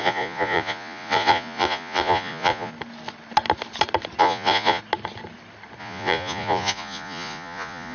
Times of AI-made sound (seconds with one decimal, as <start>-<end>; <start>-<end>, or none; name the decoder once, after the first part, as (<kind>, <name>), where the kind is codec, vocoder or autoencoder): 0.0-2.7 (vocoder, Vocos); 4.2-4.8; 5.8-7.9